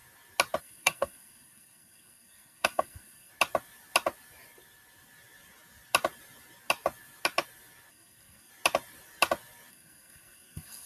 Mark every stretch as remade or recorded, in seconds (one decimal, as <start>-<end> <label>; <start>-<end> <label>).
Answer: 0.0-0.6 recorded; 0.6-3.3 remade; 3.3-7.9 recorded; 7.9-8.5 remade; 8.5-9.7 recorded; 9.7-10.9 remade